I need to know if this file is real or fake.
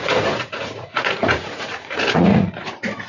fake